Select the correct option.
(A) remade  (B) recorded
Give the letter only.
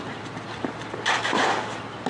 B